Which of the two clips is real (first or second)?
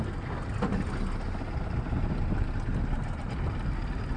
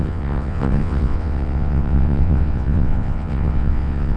first